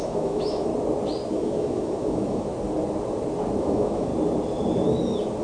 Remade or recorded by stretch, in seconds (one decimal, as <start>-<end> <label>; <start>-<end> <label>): 0.0-0.7 remade; 0.7-1.3 recorded; 1.3-2.5 remade; 2.5-3.6 recorded; 3.6-4.1 remade; 4.1-5.4 recorded